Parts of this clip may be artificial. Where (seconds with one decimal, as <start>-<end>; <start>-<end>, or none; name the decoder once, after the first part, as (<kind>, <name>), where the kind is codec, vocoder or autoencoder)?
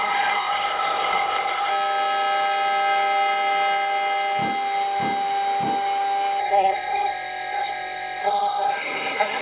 0.0-1.7 (codec, SNAC); 6.4-9.4